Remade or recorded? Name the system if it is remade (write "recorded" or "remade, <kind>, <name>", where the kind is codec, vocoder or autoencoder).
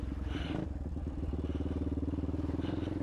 recorded